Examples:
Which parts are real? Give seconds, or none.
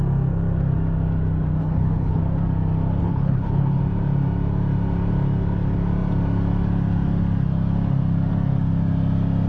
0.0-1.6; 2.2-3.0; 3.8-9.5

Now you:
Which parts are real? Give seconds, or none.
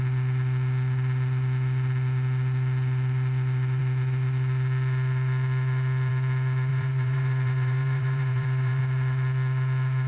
0.0-6.7; 8.8-10.1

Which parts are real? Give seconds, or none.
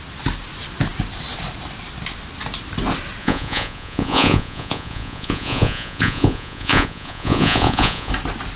0.0-3.2; 8.1-8.6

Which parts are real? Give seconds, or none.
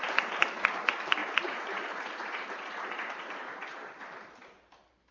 0.0-1.2; 4.3-5.1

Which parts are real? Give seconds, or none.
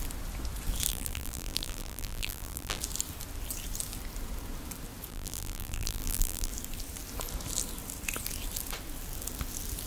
0.0-0.9; 2.8-5.1; 6.5-9.9